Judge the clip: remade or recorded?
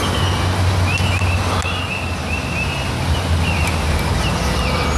recorded